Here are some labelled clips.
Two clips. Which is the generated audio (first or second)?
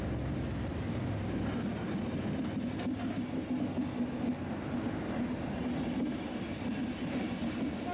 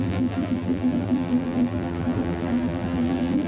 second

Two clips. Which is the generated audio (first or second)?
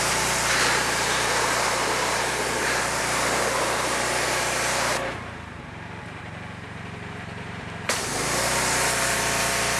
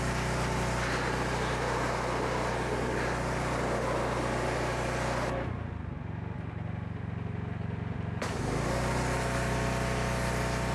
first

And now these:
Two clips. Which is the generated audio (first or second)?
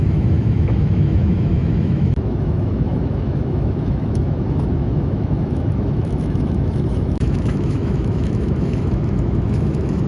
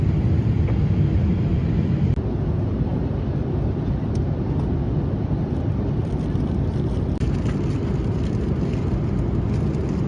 first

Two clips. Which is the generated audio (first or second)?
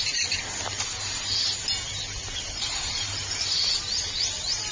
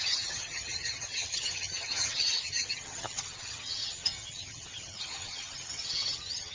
second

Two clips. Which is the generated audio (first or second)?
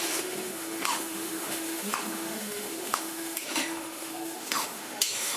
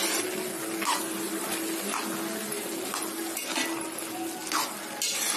first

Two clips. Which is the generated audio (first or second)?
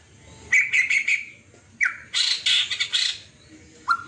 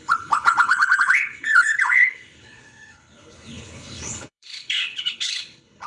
second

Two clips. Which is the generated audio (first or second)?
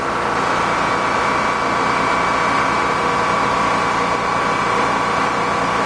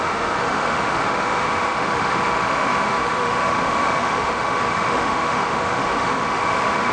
second